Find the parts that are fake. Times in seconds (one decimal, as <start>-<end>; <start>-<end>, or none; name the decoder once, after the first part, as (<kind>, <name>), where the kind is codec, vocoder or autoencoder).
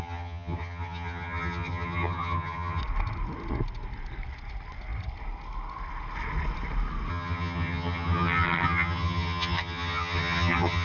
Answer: 0.0-2.8 (vocoder, HiFi-GAN); 7.1-10.8